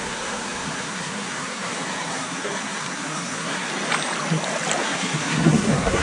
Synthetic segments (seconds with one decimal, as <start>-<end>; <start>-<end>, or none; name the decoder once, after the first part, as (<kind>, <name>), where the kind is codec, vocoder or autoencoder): 0.0-3.7 (codec, SNAC); 4.8-6.0